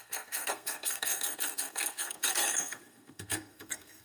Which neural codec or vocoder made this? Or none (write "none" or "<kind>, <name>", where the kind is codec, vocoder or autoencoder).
codec, SNAC